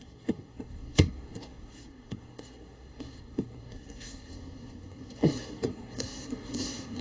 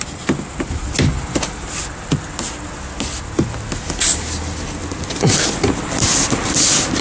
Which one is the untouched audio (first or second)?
second